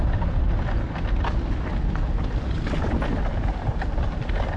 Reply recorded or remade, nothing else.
recorded